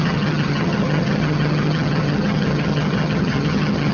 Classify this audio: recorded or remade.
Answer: remade